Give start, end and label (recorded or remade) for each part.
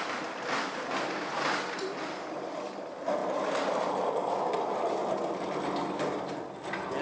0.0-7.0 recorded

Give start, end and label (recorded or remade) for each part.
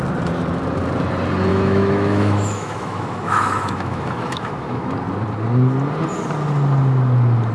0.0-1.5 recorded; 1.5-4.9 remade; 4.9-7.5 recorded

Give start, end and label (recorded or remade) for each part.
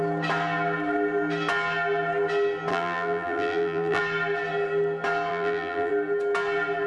0.0-2.7 recorded; 2.7-4.0 remade; 4.0-5.3 recorded; 5.3-5.9 remade; 5.9-6.9 recorded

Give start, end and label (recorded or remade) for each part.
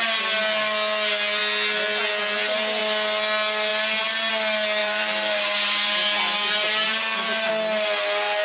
0.0-4.8 recorded; 4.8-7.5 remade; 7.5-8.4 recorded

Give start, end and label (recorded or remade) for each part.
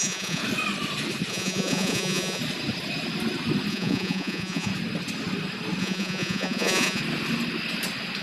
0.0-0.4 remade; 0.4-1.3 recorded; 1.3-2.4 remade; 2.4-3.7 recorded; 3.7-4.7 remade; 4.7-5.8 recorded; 5.8-7.0 remade; 7.0-8.2 recorded